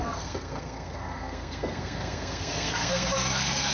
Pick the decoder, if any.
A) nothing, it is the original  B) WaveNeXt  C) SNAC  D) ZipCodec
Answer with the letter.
C